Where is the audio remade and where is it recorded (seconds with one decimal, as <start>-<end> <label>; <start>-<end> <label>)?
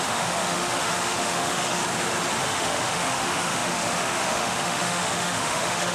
0.0-1.8 remade; 1.8-2.4 recorded; 2.4-5.9 remade